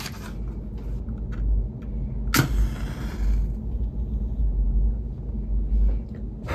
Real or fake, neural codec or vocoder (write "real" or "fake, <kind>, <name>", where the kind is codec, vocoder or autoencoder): real